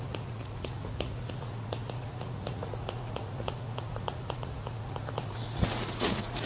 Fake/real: fake